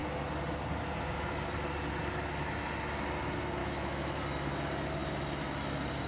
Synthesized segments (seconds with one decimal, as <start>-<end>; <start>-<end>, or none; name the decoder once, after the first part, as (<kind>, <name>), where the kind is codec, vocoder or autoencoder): 3.6-4.2 (autoencoder, DAC-VAE)

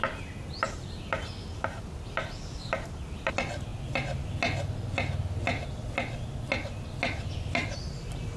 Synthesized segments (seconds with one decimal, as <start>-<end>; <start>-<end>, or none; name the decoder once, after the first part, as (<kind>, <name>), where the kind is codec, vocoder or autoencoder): none

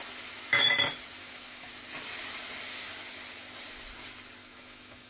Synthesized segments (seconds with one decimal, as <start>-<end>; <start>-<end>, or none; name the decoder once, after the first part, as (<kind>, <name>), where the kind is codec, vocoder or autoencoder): 1.2-1.7 (autoencoder, DAC-VAE); 4.4-5.1

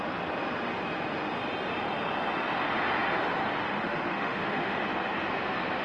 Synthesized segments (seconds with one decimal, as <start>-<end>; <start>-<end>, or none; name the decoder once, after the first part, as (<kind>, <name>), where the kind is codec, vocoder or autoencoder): 3.6-4.8 (autoencoder, DAC-VAE)